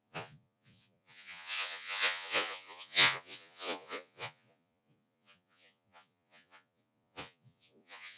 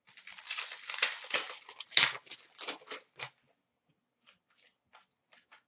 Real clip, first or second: second